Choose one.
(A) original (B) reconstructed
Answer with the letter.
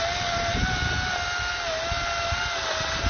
A